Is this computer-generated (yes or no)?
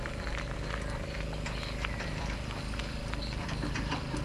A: no